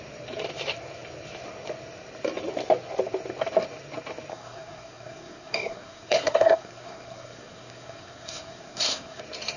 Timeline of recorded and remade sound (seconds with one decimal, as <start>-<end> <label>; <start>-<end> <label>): 0.0-4.3 recorded; 4.3-9.2 remade; 9.2-9.6 recorded